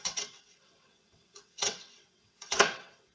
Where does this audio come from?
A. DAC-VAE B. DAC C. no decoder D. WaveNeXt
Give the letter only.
D